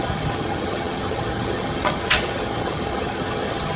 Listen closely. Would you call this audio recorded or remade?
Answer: remade